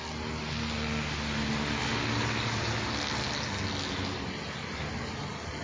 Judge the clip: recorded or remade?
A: recorded